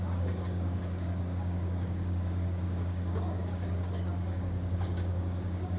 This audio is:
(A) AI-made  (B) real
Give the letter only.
A